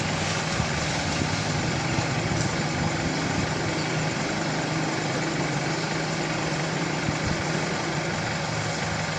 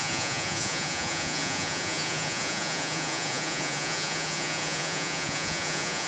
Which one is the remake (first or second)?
second